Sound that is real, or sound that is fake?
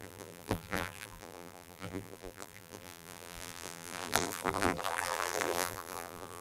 fake